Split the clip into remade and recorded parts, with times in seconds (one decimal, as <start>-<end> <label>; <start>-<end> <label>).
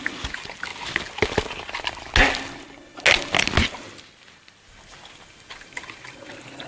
0.0-6.7 recorded